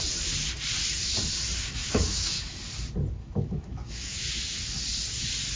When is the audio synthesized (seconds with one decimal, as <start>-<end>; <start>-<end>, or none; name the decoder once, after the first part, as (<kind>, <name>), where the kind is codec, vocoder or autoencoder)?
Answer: 1.8-2.6 (autoencoder, DAC-VAE); 3.2-4.3